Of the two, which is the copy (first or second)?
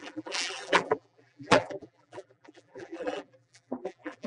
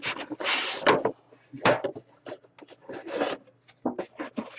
first